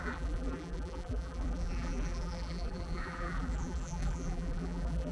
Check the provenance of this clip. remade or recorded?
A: remade